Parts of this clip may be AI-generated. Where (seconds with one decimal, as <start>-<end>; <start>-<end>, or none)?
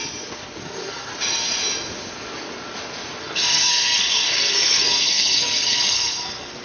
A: 0.6-1.1; 3.2-6.6